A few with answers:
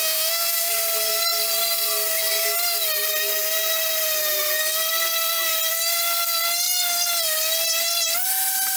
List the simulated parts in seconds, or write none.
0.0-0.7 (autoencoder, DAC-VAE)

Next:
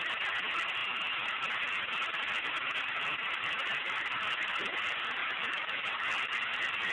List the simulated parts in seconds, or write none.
5.2-5.9 (autoencoder, DAC-VAE)

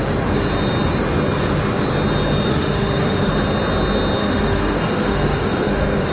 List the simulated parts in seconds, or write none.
2.5-3.3 (autoencoder, DAC-VAE); 4.2-6.1